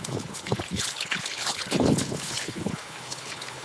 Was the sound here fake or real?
fake